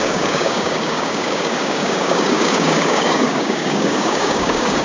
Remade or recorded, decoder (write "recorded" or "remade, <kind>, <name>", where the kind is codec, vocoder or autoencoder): remade, codec, DAC